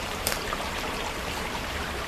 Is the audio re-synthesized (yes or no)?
yes